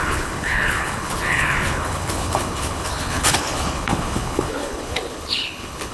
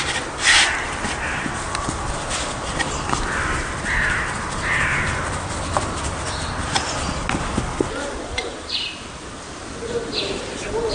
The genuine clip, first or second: second